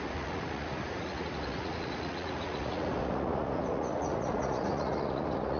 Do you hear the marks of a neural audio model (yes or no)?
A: yes